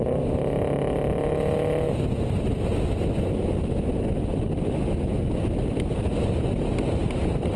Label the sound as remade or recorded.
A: recorded